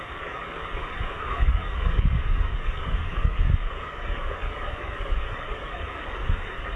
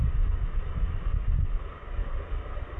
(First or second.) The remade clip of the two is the first